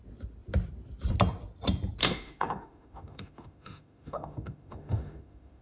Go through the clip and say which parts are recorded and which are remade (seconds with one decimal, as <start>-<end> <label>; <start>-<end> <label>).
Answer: 0.0-2.0 recorded; 2.0-5.6 remade